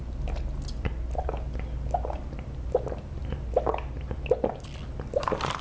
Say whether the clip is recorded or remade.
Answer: recorded